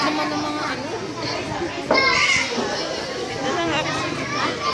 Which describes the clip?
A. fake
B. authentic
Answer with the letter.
B